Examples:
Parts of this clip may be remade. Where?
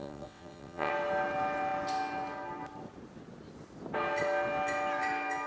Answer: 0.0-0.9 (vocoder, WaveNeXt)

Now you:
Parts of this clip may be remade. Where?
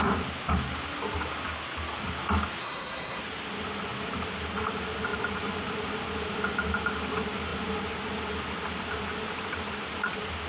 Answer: 2.6-3.2 (codec, SNAC)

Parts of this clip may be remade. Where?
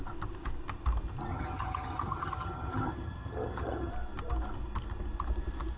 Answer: 1.3-3.9 (vocoder, HiFi-GAN)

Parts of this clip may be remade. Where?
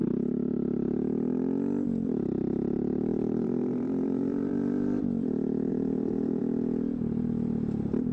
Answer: 3.1-5.0 (vocoder, BigVGAN v2); 5.7-6.4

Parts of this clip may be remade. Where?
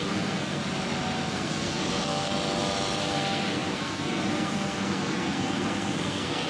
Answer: 0.0-0.6 (codec, SNAC); 1.3-2.3; 3.0-6.5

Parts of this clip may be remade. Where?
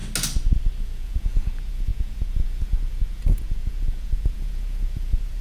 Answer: 0.8-5.4 (vocoder, Vocos)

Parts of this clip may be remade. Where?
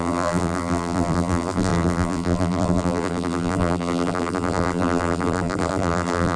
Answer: 0.0-6.4 (vocoder, BigVGAN v2)